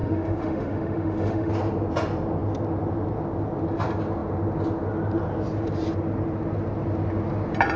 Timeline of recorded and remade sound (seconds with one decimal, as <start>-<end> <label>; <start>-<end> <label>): 0.0-1.5 remade; 1.5-7.8 recorded